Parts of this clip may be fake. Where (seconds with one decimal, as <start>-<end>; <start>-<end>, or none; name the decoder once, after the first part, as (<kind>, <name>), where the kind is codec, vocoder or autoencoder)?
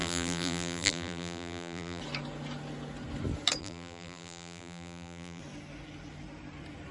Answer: 0.0-2.0 (vocoder, BigVGAN v2); 3.6-5.4